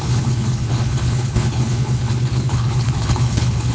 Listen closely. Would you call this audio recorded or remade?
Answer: remade